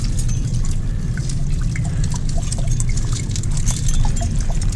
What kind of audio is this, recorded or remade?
recorded